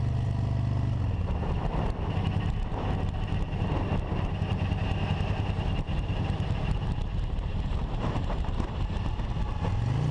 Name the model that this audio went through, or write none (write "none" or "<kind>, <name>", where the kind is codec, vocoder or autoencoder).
none